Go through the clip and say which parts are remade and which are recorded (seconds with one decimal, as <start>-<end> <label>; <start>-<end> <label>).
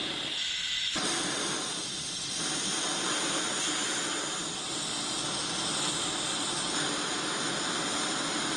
0.0-3.7 remade; 3.7-8.6 recorded